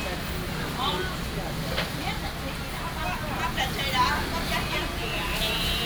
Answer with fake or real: real